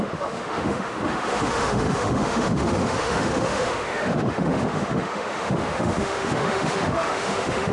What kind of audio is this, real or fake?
fake